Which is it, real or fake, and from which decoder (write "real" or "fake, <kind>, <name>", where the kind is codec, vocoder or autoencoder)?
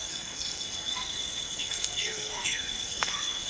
fake, codec, SNAC